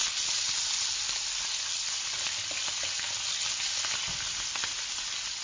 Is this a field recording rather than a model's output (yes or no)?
yes